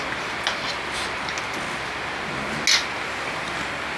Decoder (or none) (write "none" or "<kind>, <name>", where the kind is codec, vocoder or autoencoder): none